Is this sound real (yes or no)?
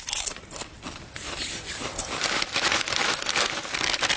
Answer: no